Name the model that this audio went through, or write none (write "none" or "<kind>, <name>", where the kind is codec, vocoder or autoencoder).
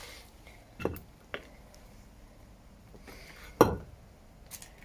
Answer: none